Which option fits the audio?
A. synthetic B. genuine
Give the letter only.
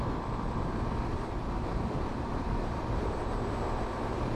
A